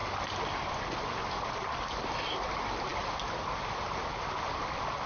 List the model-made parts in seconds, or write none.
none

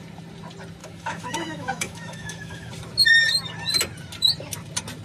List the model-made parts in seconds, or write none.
0.8-2.7 (autoencoder, DAC-VAE)

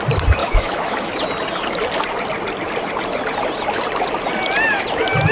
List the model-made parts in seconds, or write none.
0.4-1.1 (autoencoder, DAC-VAE)

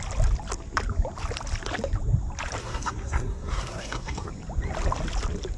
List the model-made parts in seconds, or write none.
2.6-4.3 (codec, SNAC)